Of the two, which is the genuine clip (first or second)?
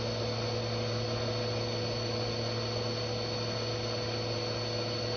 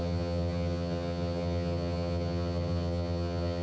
first